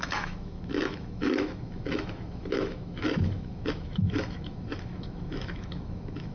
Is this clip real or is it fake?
fake